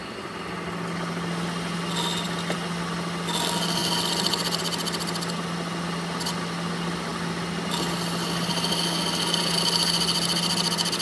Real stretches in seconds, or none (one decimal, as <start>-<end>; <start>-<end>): 0.0-11.0